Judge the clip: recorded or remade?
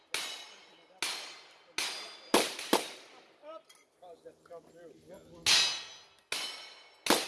recorded